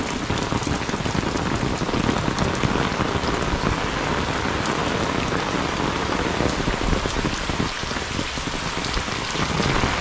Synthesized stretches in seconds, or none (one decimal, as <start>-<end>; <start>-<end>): none